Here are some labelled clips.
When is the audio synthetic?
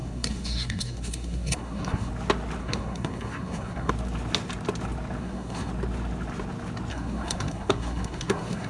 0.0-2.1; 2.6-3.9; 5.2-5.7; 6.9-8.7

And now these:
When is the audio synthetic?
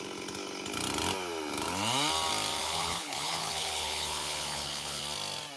2.6-5.0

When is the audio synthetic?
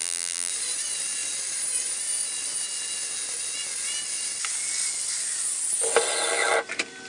0.0-0.5